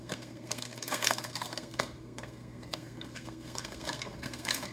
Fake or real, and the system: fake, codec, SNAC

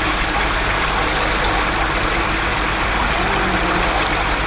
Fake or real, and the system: real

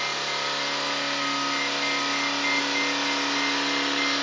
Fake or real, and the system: real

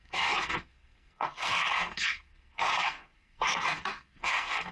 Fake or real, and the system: fake, codec, SNAC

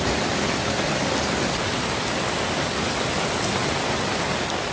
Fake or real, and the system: real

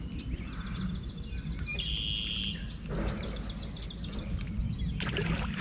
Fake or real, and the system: real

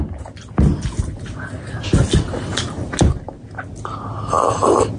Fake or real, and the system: real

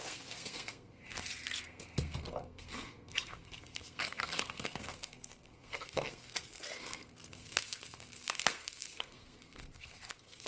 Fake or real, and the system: fake, codec, SNAC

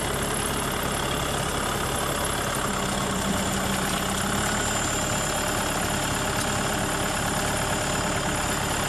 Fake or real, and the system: real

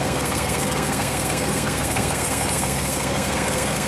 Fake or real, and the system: fake, codec, SNAC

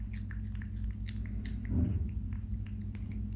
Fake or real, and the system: real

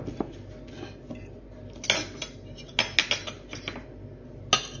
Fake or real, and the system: real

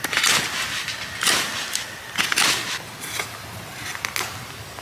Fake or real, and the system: real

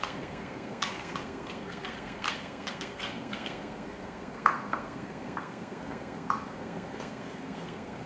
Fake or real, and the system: fake, codec, SNAC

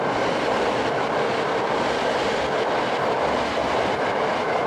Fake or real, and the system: real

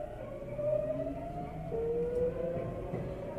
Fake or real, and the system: real